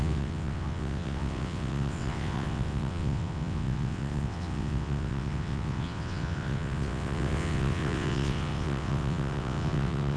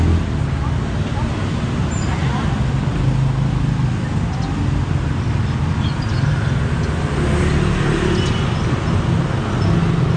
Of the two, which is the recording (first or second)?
second